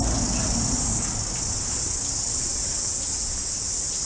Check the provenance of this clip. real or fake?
real